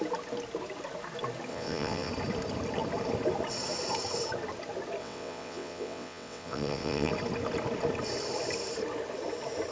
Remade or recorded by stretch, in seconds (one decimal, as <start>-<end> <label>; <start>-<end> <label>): 0.0-1.5 recorded; 1.5-2.1 remade; 2.1-5.0 recorded; 5.0-7.1 remade; 7.1-9.7 recorded

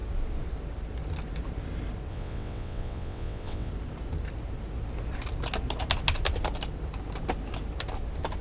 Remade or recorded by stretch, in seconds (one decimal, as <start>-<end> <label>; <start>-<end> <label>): 0.0-2.1 recorded; 2.1-3.7 remade; 3.7-8.4 recorded

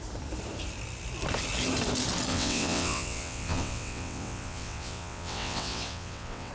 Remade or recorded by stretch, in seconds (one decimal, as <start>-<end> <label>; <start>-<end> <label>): 0.0-2.3 recorded; 2.3-6.5 remade